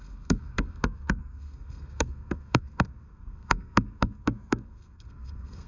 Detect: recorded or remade remade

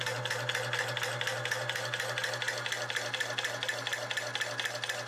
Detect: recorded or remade recorded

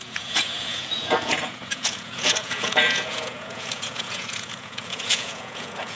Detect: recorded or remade remade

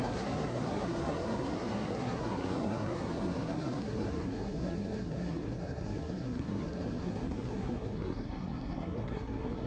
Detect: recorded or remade remade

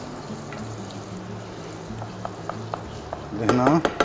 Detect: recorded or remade recorded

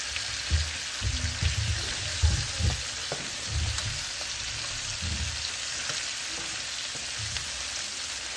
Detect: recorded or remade recorded